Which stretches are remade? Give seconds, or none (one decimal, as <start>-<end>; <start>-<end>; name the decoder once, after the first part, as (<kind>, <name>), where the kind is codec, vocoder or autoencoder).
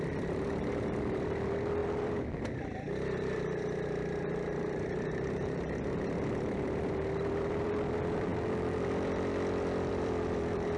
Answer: 0.0-8.3 (vocoder, BigVGAN v2); 9.9-10.8